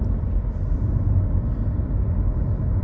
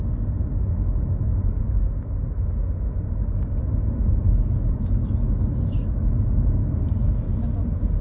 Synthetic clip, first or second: first